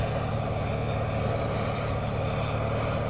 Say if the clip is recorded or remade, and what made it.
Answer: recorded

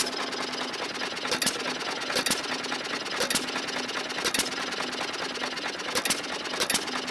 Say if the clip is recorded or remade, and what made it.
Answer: recorded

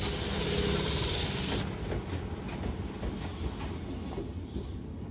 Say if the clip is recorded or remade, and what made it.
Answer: recorded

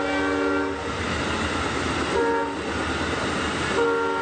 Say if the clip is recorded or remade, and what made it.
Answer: recorded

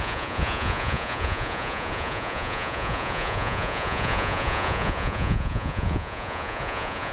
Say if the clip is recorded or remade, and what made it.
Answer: remade, vocoder, Vocos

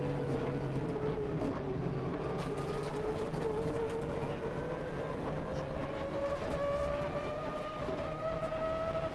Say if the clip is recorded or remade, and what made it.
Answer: recorded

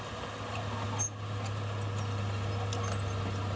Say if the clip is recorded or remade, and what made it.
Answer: recorded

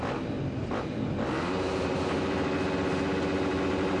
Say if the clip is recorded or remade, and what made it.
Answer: recorded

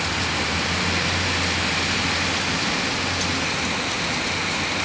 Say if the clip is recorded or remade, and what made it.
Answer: recorded